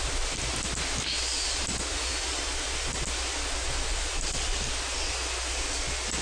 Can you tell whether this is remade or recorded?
recorded